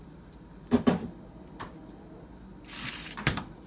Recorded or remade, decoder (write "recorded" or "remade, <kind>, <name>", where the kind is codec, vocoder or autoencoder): remade, vocoder, BigVGAN v2